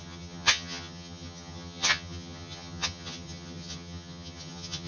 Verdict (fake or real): fake